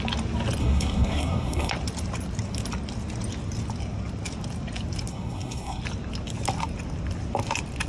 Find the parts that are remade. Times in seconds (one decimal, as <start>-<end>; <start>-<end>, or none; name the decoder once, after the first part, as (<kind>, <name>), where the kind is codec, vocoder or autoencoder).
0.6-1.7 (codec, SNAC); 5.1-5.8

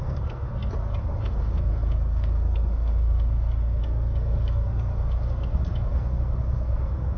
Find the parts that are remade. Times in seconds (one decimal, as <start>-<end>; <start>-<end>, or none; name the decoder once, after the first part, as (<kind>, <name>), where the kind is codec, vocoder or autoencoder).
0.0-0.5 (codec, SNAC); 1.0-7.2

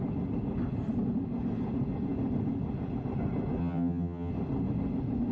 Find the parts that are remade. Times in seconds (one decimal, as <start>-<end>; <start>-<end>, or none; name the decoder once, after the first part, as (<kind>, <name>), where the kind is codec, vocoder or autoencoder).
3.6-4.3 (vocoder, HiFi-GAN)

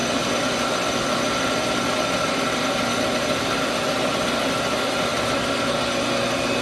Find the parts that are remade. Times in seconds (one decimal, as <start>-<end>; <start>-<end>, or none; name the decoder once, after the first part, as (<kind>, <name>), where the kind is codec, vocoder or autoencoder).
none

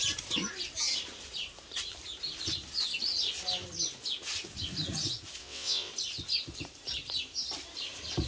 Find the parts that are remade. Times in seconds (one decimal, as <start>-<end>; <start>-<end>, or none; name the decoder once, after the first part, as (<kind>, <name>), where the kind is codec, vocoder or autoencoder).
5.4-5.9 (vocoder, WaveNeXt)

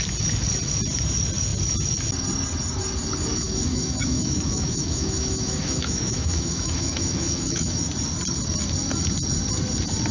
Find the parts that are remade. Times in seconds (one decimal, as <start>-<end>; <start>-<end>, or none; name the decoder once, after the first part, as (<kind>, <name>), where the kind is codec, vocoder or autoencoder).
3.3-7.9 (autoencoder, DAC-VAE)

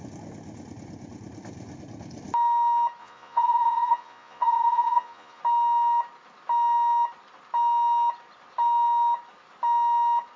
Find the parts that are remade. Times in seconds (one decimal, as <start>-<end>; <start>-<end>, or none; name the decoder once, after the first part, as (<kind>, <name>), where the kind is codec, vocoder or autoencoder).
3.0-5.4 (vocoder, Vocos)